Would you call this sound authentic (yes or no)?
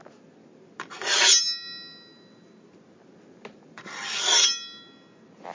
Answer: yes